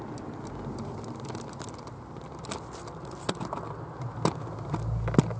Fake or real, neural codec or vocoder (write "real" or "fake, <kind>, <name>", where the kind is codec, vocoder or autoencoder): real